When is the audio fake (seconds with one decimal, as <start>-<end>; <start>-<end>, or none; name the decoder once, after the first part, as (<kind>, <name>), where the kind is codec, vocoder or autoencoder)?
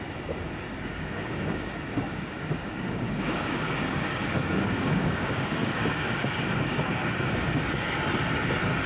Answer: 0.9-1.7 (codec, DAC); 2.1-6.8